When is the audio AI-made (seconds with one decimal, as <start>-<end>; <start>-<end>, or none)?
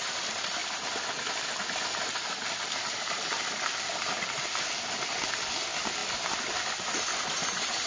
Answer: 0.0-0.6; 2.8-7.9